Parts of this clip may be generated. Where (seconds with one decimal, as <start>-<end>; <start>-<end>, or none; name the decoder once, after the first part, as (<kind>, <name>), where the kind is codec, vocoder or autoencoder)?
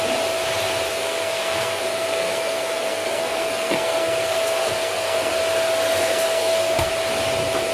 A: 0.9-5.3 (codec, SNAC); 6.0-6.9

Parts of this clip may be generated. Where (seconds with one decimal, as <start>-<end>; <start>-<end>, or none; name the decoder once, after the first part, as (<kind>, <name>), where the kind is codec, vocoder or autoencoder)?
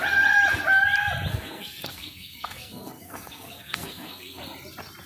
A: 1.3-4.4 (codec, SNAC)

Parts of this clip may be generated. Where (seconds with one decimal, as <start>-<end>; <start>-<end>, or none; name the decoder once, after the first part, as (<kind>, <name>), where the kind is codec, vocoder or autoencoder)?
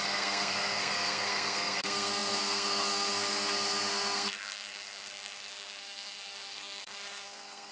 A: 0.0-7.7 (codec, SNAC)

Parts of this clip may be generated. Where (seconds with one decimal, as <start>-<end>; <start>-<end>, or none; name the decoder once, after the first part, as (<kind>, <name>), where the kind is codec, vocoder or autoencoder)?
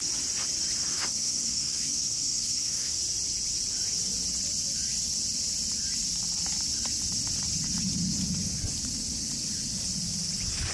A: 0.9-3.0 (codec, SNAC)